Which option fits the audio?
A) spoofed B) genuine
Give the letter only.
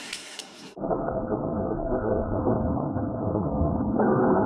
A